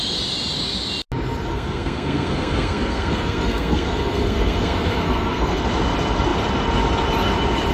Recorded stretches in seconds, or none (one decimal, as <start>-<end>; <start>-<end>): 0.0-1.5; 5.6-7.7